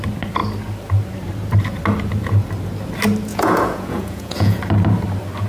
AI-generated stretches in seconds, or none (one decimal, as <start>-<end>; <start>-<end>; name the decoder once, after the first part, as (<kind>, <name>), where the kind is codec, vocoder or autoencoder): 3.3-4.6 (vocoder, Vocos)